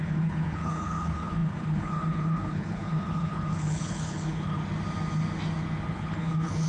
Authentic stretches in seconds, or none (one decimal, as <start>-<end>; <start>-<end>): 4.6-5.9